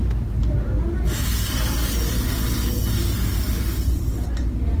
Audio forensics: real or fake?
real